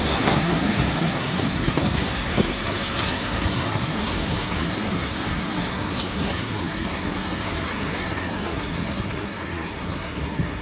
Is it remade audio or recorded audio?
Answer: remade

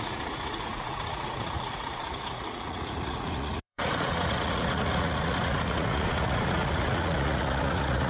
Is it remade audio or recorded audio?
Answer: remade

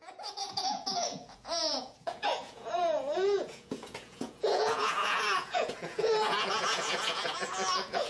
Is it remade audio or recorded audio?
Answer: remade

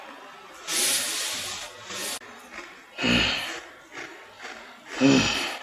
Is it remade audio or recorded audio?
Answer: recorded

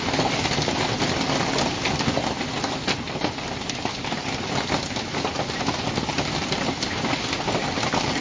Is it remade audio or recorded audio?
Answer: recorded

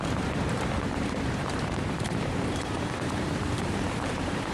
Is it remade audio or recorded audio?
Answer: remade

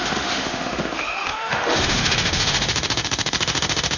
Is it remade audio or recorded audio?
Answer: remade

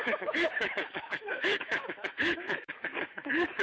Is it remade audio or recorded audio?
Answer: remade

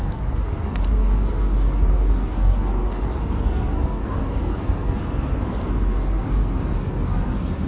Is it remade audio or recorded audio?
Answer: remade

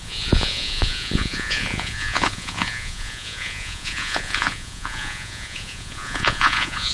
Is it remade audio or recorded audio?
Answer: remade